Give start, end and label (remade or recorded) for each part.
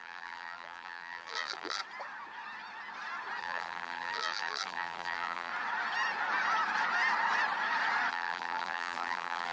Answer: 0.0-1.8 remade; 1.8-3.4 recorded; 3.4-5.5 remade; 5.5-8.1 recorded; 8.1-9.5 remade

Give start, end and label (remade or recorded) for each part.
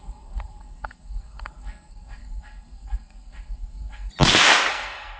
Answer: 0.0-4.1 remade; 4.1-4.7 recorded; 4.7-5.2 remade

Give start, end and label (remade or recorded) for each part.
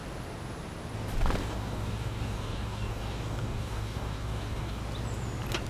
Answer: 0.0-1.4 recorded; 1.4-4.8 remade; 4.8-5.7 recorded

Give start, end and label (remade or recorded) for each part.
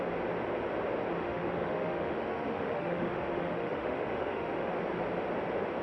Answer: 0.0-1.2 recorded; 1.2-4.7 remade; 4.7-5.8 recorded